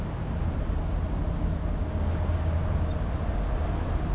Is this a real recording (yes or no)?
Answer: yes